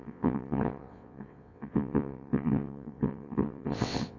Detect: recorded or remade remade